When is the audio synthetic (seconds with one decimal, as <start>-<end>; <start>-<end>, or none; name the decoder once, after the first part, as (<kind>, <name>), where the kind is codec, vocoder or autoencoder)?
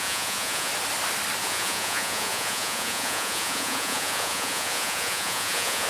0.0-0.7 (vocoder, Vocos); 1.4-5.9